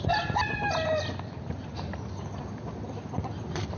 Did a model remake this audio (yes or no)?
no